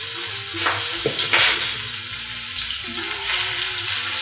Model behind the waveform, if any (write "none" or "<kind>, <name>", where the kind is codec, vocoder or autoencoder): none